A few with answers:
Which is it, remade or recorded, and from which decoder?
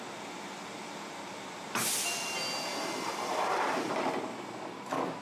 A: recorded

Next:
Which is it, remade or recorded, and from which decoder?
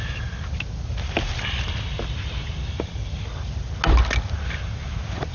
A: recorded